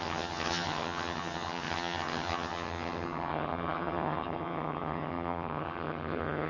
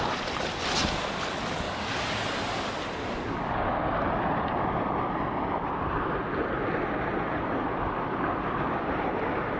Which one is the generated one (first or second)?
first